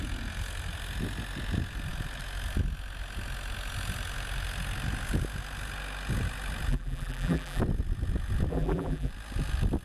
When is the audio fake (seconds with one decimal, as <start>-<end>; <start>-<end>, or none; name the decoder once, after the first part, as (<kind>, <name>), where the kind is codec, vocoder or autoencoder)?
6.7-7.6 (vocoder, BigVGAN v2); 8.5-9.1

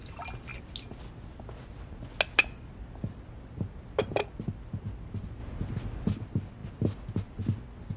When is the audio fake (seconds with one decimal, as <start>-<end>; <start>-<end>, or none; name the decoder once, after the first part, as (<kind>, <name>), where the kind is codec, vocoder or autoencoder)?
none

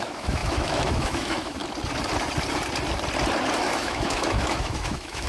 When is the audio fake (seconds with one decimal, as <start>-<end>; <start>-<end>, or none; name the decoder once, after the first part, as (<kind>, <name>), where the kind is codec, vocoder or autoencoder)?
0.0-1.6 (autoencoder, DAC-VAE); 3.6-5.3

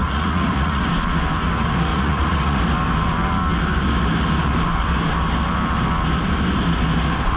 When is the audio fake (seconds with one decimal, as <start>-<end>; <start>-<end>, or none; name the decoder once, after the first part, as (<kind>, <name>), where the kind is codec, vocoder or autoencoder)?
0.0-0.8 (vocoder, Vocos); 1.9-2.6

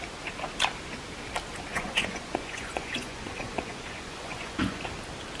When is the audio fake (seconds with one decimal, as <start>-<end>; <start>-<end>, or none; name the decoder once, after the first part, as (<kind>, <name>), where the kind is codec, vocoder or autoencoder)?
1.7-4.8 (vocoder, Vocos)

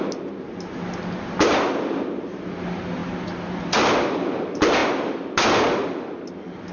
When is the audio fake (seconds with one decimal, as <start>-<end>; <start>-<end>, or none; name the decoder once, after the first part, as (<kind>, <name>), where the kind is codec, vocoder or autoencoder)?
none

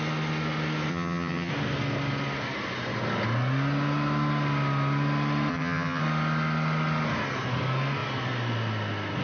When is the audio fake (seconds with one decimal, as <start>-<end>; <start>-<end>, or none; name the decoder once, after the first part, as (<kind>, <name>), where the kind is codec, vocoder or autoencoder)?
0.9-1.5 (vocoder, HiFi-GAN); 5.5-6.0

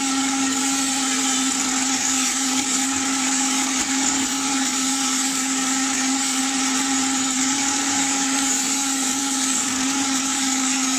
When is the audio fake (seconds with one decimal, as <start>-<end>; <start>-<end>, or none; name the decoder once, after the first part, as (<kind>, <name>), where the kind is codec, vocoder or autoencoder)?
0.0-0.6 (codec, DAC); 1.9-6.4; 7.4-11.0